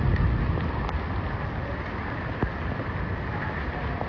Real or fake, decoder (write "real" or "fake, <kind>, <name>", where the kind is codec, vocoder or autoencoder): real